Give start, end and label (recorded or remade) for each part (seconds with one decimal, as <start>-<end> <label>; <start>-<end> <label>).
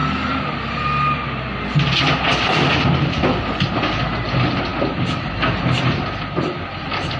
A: 0.0-7.2 recorded